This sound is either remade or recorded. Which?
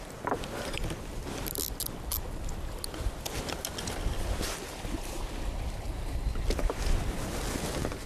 recorded